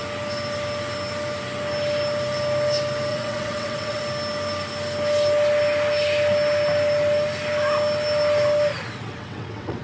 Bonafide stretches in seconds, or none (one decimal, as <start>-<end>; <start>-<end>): 0.0-3.1; 4.0-8.9